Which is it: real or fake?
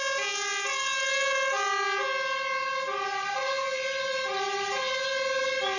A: real